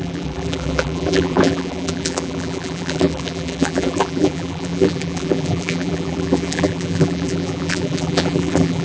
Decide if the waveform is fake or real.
fake